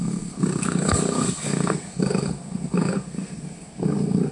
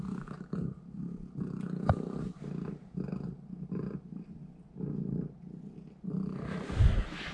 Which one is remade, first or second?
first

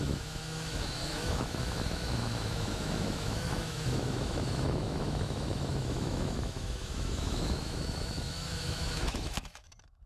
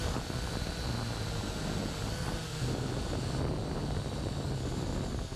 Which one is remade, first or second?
first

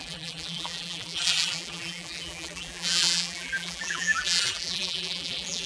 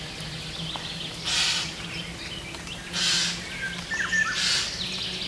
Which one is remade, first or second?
first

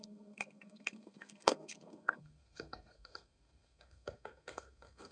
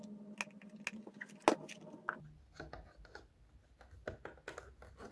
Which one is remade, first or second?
first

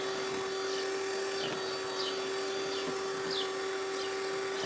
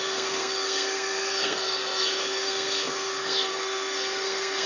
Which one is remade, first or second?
second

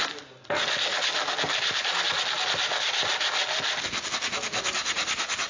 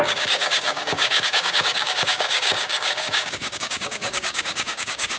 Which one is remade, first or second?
second